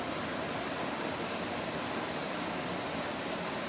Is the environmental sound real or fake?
real